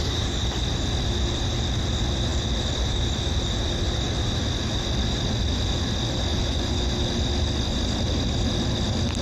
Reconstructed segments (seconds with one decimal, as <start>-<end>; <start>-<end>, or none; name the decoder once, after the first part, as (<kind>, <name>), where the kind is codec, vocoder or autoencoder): 6.3-6.9 (vocoder, Vocos)